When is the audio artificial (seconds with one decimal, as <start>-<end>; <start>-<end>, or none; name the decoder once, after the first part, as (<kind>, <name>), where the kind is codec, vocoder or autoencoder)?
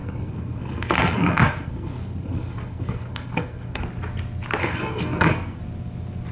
0.0-3.8 (codec, SNAC); 4.6-5.6